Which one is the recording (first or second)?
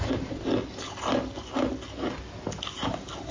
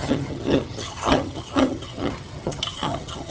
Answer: first